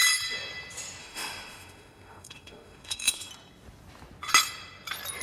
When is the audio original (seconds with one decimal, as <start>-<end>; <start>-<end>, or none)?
0.0-1.0; 3.3-5.2